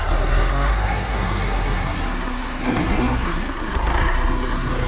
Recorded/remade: remade